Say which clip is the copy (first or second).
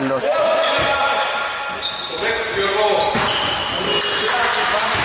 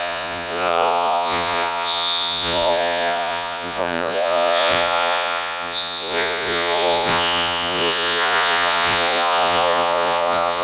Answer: second